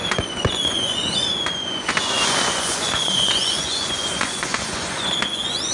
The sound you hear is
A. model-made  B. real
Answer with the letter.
A